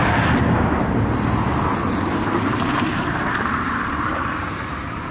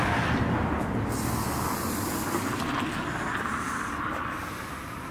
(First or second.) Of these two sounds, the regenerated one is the first